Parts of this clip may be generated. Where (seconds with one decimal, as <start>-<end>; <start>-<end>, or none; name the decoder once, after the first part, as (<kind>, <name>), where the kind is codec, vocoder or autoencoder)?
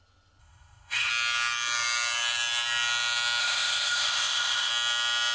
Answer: 0.4-1.1 (codec, ZipCodec); 3.4-4.7